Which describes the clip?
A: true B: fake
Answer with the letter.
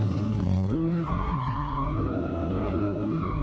B